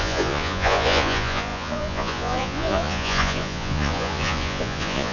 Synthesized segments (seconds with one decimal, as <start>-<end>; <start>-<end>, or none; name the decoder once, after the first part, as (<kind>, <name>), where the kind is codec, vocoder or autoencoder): 0.0-5.1 (vocoder, Vocos)